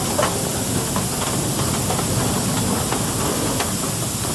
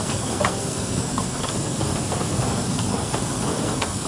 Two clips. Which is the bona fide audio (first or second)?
first